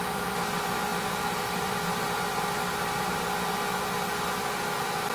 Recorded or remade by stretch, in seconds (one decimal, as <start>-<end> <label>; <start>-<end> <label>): 0.0-5.1 recorded